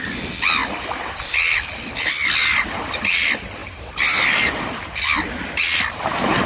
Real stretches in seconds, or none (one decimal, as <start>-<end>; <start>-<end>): 0.0-6.5